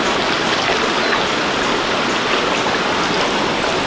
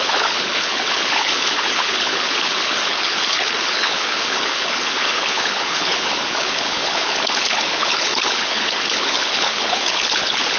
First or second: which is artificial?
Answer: second